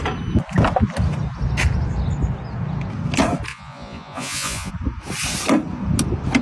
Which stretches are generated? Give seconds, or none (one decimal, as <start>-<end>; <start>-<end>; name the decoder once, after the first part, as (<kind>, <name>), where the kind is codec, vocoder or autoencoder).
3.5-4.7 (vocoder, Vocos)